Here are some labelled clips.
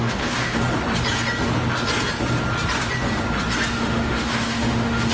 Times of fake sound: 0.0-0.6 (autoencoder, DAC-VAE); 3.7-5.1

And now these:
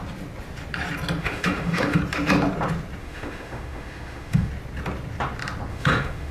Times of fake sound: 1.2-2.0 (autoencoder, DAC-VAE); 3.0-4.5; 5.7-6.3

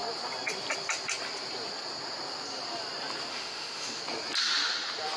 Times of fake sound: 3.3-4.0 (autoencoder, DAC-VAE)

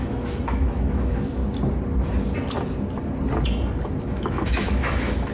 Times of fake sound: 0.0-1.4 (autoencoder, DAC-VAE); 4.0-5.3

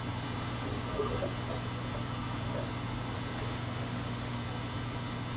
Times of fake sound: 3.8-4.4 (autoencoder, DAC-VAE)

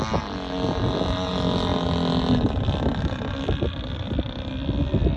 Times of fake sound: none